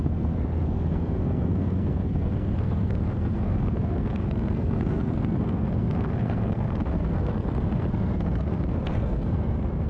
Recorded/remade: remade